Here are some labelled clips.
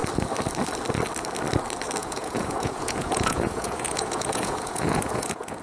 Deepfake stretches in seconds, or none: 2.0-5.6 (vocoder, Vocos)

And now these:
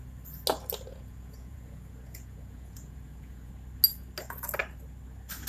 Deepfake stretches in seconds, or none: 0.9-3.5 (vocoder, Vocos)

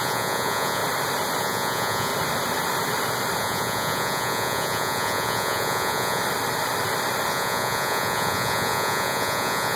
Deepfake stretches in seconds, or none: 0.0-0.8 (vocoder, Vocos); 1.4-2.1; 3.4-6.2; 7.3-9.8

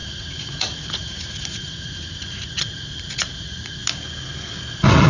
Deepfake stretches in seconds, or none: 0.0-3.8 (vocoder, Vocos)

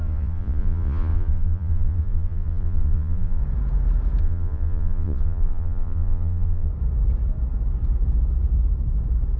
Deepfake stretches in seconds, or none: 0.0-3.4 (vocoder, Vocos); 4.2-6.7